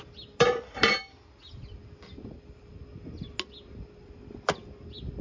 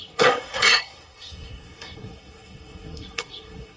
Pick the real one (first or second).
first